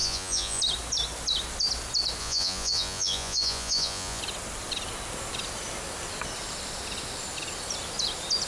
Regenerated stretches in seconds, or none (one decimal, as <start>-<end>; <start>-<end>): 0.0-0.6; 2.2-4.2